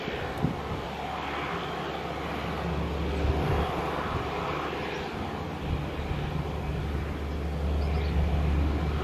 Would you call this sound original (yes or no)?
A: yes